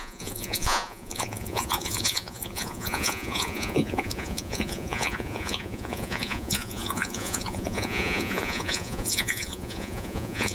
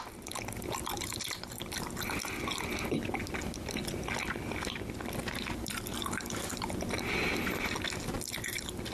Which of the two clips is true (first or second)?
second